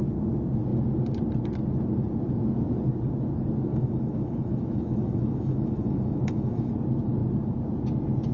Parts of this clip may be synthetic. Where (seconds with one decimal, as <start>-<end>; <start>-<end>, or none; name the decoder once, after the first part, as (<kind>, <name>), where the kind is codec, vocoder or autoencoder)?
3.7-6.7 (autoencoder, DAC-VAE)